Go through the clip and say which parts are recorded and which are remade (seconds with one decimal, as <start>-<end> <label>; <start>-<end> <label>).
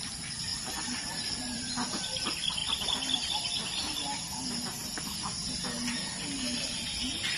0.0-2.6 remade; 2.6-7.0 recorded; 7.0-7.4 remade